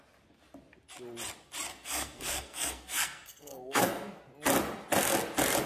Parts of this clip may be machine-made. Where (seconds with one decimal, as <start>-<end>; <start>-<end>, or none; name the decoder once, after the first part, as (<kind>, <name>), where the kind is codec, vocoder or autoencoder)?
1.7-4.2 (codec, SNAC)